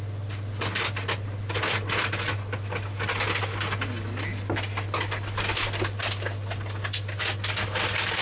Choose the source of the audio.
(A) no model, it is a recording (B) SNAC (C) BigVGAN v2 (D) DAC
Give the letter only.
A